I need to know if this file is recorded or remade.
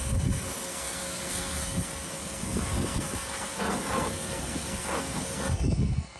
remade